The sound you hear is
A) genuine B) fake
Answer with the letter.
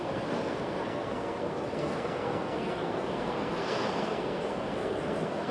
B